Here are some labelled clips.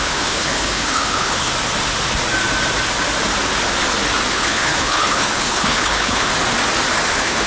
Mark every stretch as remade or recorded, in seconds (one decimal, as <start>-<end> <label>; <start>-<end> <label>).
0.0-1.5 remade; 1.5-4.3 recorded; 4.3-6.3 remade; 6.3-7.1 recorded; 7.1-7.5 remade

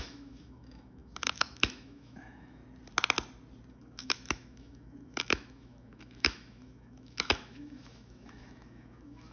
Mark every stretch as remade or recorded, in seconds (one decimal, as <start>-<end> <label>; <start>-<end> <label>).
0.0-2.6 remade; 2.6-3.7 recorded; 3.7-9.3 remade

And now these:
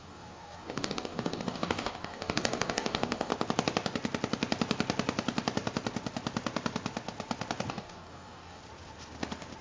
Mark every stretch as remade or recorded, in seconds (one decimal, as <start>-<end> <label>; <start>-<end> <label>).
0.0-3.3 remade; 3.3-7.7 recorded; 7.7-8.6 remade; 8.6-9.6 recorded

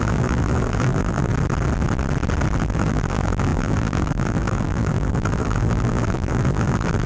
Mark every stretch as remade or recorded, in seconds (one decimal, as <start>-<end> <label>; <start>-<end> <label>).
0.0-1.3 remade; 1.3-2.6 recorded; 2.6-7.1 remade

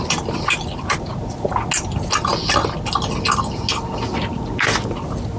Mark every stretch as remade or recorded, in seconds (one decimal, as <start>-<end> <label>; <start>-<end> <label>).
0.0-5.4 recorded

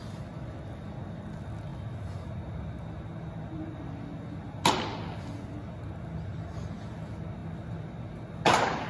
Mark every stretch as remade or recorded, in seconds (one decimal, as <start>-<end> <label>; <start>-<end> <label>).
0.0-8.9 recorded

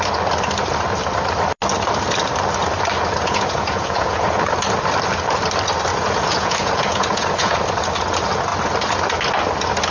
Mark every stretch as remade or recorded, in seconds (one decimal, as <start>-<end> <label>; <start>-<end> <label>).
0.0-3.2 recorded; 3.2-4.3 remade; 4.3-5.9 recorded; 5.9-7.6 remade; 7.6-9.9 recorded

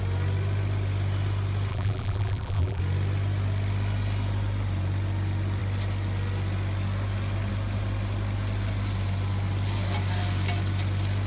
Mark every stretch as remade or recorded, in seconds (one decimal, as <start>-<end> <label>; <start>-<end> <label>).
0.0-1.7 recorded; 1.7-2.8 remade; 2.8-11.3 recorded